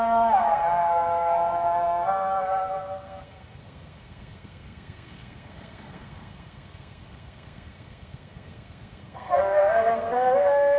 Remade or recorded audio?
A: remade